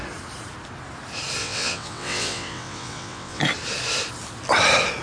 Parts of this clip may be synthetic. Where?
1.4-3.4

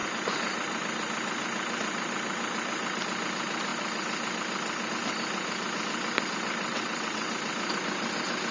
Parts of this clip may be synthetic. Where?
6.7-7.3

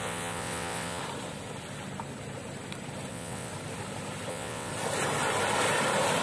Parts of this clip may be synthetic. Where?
0.0-1.0; 3.1-3.5; 4.3-4.7

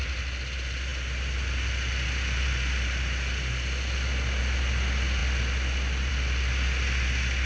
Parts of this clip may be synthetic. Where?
none

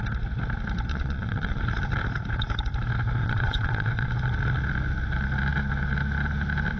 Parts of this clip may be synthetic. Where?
0.9-1.6; 3.2-4.1

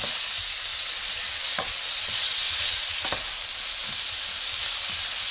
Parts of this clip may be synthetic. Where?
0.7-3.0

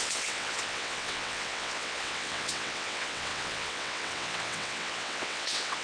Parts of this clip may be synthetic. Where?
0.0-5.8